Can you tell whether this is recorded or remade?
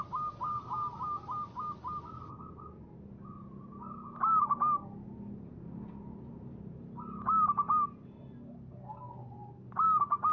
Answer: recorded